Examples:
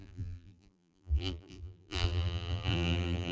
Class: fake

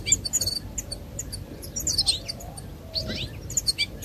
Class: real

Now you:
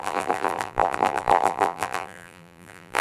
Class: fake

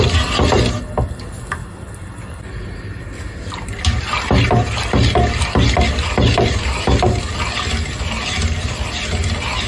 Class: real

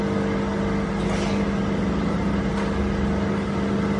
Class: real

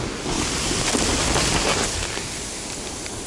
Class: real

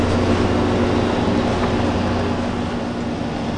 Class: real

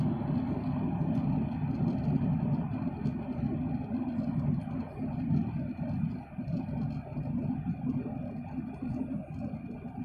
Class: real